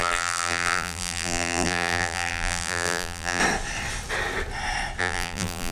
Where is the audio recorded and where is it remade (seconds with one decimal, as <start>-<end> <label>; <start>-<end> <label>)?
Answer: 0.0-3.4 remade; 3.4-5.0 recorded; 5.0-5.7 remade